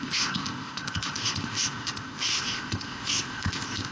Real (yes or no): no